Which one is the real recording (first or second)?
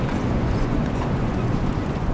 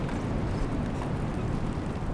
second